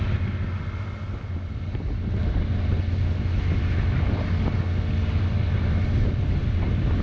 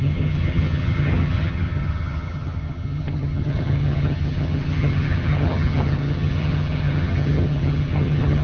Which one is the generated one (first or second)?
second